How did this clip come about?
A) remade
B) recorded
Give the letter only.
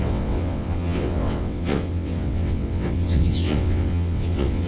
A